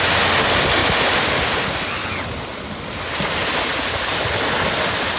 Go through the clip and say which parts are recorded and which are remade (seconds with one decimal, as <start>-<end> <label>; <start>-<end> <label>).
0.0-0.8 recorded; 0.8-1.6 remade; 1.6-3.4 recorded; 3.4-4.1 remade; 4.1-5.2 recorded